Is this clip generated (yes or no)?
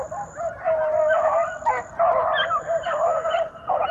yes